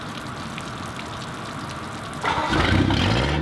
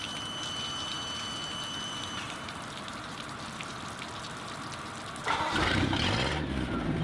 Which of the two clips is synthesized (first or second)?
second